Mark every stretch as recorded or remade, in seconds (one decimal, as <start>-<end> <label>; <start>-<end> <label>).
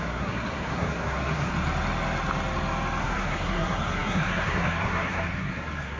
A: 0.0-1.5 remade; 1.5-3.0 recorded; 3.0-6.0 remade